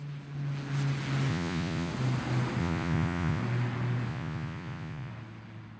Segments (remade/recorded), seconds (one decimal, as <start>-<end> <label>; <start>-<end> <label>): 0.0-1.3 recorded; 1.3-1.9 remade; 1.9-2.6 recorded; 2.6-3.4 remade; 3.4-4.1 recorded; 4.1-5.1 remade; 5.1-5.8 recorded